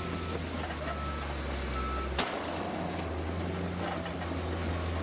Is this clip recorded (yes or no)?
yes